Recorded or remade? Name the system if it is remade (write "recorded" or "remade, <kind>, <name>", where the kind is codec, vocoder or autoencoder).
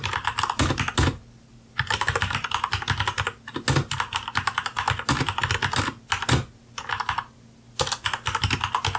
recorded